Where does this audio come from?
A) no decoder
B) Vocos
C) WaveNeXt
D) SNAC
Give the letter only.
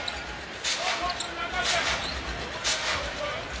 A